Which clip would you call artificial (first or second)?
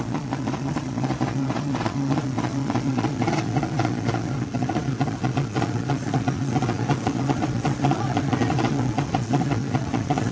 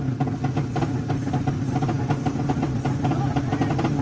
first